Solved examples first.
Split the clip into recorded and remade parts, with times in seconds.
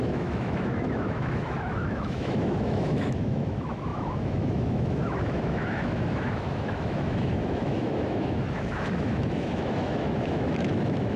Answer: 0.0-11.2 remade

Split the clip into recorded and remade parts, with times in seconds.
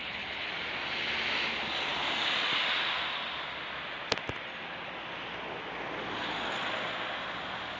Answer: 0.0-0.5 remade; 0.5-7.8 recorded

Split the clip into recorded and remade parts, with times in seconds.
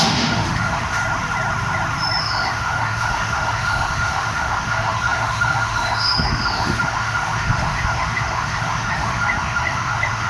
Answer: 0.0-1.0 remade; 1.0-2.2 recorded; 2.2-10.3 remade